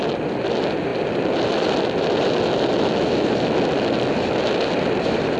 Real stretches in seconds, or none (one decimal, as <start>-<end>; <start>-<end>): 0.0-5.4